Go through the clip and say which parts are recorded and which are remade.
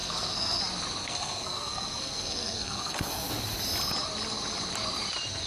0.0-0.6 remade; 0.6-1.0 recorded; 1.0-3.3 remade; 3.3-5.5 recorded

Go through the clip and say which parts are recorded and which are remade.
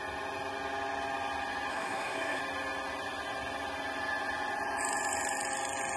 0.0-1.7 recorded; 1.7-2.4 remade; 2.4-6.0 recorded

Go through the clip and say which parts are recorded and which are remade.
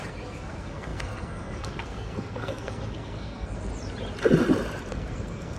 0.0-3.7 remade; 3.7-4.9 recorded; 4.9-5.6 remade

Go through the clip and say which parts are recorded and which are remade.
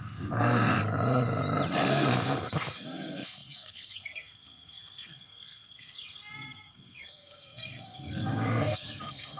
0.0-0.8 remade; 0.8-1.9 recorded; 1.9-9.4 remade